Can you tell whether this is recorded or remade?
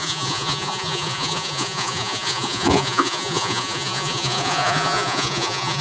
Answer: remade